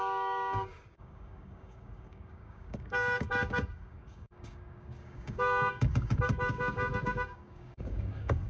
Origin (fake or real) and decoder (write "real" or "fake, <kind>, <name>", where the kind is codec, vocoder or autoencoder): fake, codec, DAC